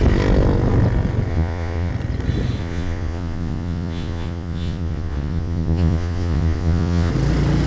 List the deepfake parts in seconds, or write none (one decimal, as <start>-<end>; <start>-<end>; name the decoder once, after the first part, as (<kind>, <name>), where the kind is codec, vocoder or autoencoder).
1.3-1.9 (vocoder, Vocos); 2.6-7.1

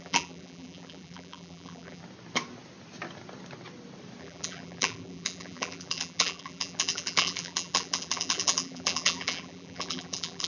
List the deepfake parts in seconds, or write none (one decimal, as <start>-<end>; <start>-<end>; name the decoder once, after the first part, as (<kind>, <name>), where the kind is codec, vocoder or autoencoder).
0.0-2.0 (vocoder, BigVGAN v2); 4.2-10.5